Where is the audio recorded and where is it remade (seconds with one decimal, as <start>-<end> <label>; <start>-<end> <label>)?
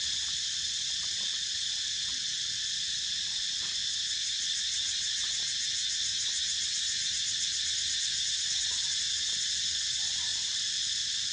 0.0-11.3 recorded